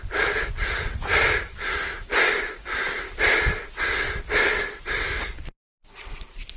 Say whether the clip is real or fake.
real